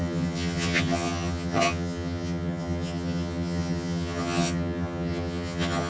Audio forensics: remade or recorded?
remade